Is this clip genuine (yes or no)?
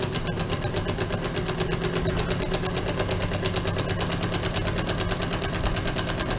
yes